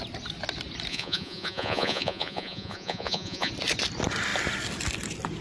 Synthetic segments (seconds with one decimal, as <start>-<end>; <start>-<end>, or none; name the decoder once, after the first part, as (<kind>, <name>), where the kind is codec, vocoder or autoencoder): 0.9-3.5 (vocoder, Vocos)